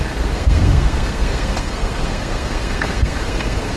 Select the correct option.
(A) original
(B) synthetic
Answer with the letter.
B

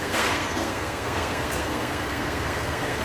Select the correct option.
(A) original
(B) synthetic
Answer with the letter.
B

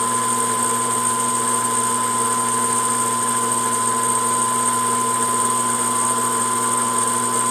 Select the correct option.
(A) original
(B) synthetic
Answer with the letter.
A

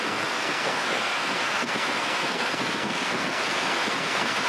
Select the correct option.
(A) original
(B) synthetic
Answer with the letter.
B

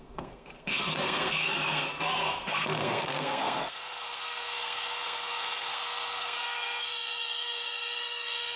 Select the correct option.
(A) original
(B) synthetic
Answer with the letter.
B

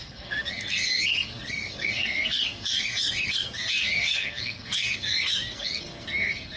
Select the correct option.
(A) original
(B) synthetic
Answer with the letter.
B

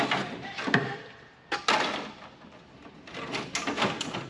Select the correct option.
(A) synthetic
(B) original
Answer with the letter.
B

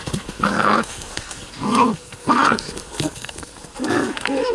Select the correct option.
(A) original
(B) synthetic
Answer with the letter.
B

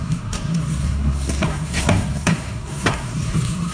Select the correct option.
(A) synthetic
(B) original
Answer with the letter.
A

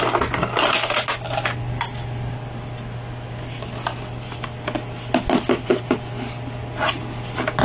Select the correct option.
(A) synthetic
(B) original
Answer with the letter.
B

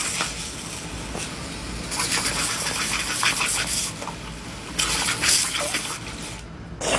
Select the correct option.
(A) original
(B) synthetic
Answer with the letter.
A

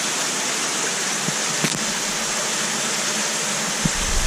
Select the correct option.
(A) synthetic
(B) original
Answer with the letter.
B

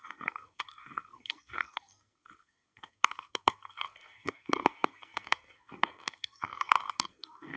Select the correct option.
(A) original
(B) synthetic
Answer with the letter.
B